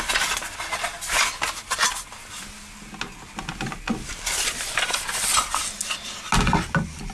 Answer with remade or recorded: recorded